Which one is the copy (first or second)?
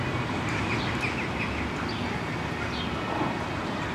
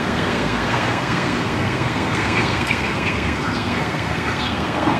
second